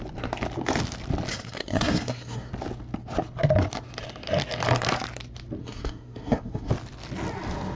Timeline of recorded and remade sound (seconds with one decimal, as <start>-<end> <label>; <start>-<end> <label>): 0.0-1.3 recorded; 1.3-2.5 remade; 2.5-5.6 recorded; 5.6-6.7 remade; 6.7-7.7 recorded